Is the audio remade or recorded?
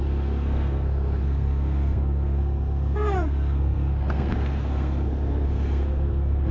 remade